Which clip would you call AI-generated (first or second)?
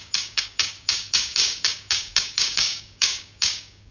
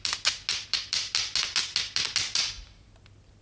first